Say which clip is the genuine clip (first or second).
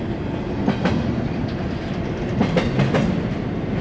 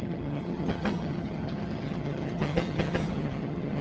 first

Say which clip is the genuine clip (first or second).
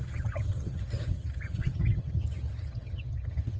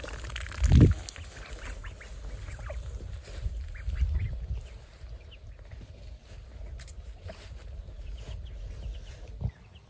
second